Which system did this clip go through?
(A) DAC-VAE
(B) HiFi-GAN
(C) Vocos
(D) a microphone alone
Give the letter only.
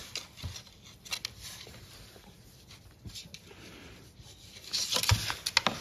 D